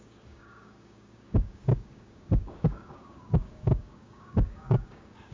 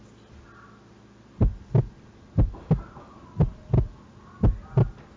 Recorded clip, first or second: second